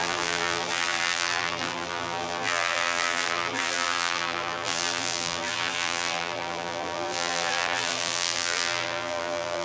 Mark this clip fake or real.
fake